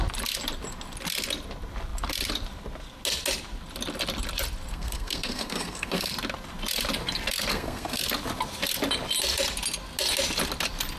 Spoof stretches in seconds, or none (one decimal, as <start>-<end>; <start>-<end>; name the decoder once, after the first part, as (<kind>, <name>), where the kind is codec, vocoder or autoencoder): 4.7-6.1 (codec, SNAC); 7.5-8.0